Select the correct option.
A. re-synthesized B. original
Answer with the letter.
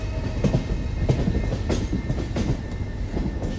B